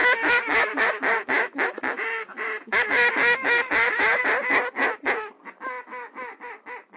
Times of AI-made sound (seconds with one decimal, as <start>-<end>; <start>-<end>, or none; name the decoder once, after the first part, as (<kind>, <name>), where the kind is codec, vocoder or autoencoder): 0.0-4.2 (autoencoder, DAC-VAE)